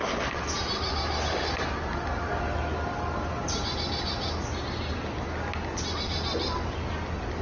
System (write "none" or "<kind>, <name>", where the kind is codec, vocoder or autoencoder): none